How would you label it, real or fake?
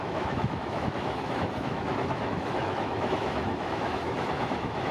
fake